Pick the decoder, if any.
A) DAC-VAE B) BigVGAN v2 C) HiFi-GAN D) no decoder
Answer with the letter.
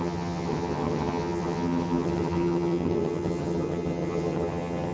C